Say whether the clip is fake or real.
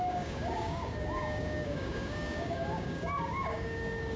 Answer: fake